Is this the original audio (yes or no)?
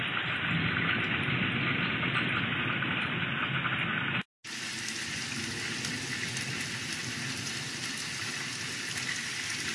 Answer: yes